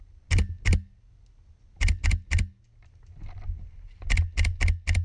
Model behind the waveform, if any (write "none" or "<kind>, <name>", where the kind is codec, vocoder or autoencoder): none